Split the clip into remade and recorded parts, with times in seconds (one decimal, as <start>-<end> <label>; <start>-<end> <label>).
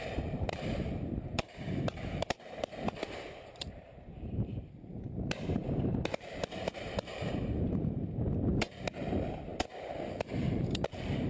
0.0-11.3 remade